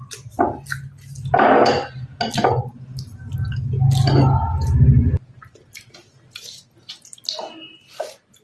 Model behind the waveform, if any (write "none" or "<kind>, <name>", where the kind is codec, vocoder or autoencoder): none